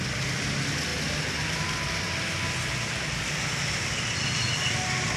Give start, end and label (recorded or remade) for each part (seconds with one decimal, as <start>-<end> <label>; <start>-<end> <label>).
0.0-5.2 recorded